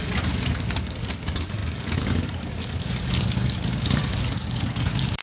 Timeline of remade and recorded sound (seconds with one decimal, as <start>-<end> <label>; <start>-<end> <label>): 0.0-5.2 remade